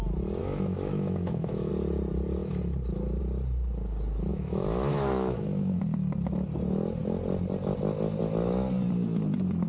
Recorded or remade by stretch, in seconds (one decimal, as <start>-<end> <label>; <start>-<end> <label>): 0.0-0.4 recorded; 0.4-1.7 remade; 1.7-4.3 recorded; 4.3-5.8 remade; 5.8-9.7 recorded

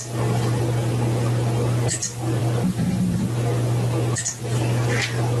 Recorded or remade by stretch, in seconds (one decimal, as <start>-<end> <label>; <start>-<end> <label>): 0.0-5.4 recorded

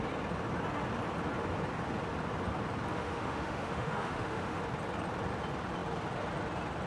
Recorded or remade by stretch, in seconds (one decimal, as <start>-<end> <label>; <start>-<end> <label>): 0.0-2.9 recorded; 2.9-4.6 remade; 4.6-6.9 recorded

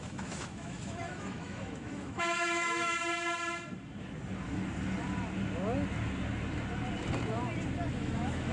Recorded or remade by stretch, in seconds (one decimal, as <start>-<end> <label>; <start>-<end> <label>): 0.0-2.9 remade; 2.9-7.9 recorded; 7.9-8.5 remade

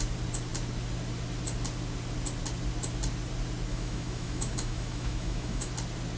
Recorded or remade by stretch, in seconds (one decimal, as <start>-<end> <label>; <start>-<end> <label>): 0.0-3.7 recorded; 3.7-5.7 remade; 5.7-6.2 recorded